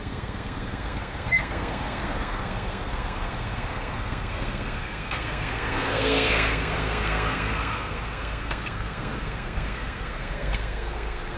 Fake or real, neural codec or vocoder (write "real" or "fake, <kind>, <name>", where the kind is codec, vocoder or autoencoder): fake, codec, SNAC